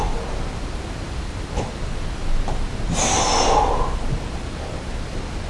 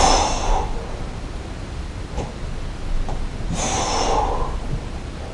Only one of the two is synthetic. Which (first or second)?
second